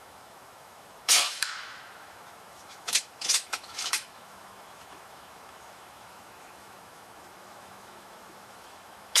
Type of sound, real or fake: fake